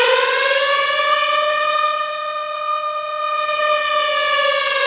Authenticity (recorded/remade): remade